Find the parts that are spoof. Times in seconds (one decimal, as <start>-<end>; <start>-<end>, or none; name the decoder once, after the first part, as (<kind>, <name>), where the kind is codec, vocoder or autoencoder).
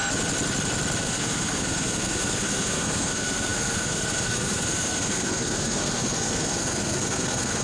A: 1.0-7.6 (codec, SNAC)